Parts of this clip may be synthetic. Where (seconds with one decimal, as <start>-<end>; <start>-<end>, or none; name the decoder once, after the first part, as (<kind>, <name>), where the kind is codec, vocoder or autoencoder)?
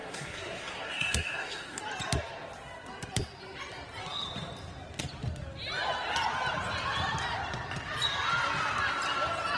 0.0-1.8 (codec, SNAC)